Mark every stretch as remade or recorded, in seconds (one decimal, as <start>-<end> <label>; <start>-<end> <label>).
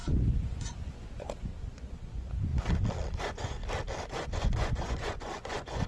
0.0-2.5 remade; 2.5-3.2 recorded; 3.2-3.6 remade; 3.6-4.1 recorded; 4.1-5.9 remade